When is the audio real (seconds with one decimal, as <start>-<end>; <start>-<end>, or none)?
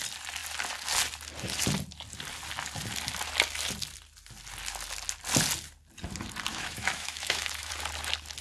0.0-6.5; 7.7-8.4